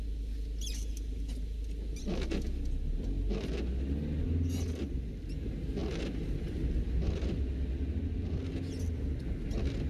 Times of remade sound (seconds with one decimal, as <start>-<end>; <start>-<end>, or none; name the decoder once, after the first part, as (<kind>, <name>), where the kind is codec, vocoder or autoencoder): none